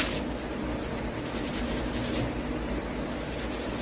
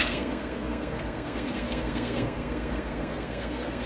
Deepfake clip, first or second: second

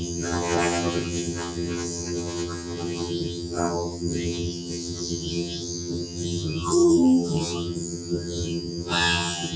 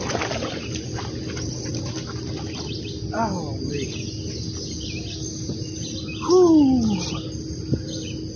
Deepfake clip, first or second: first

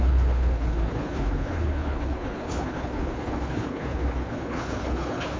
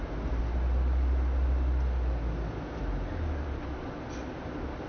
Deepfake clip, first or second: first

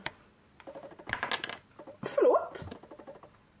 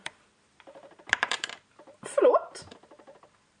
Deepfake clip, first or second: second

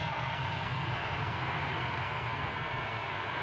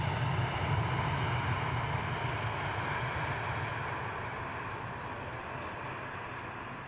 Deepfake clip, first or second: first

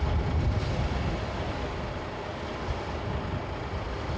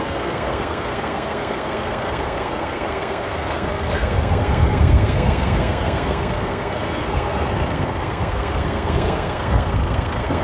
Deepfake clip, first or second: second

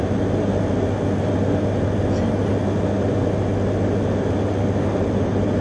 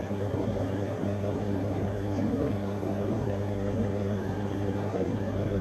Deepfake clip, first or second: second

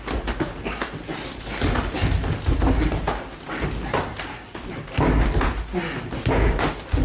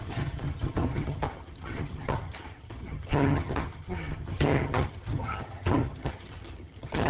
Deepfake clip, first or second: second